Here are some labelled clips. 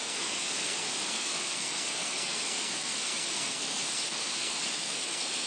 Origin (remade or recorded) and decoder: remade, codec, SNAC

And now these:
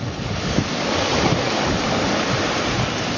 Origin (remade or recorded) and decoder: recorded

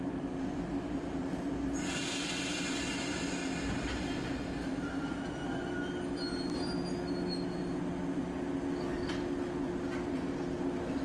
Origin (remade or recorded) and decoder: recorded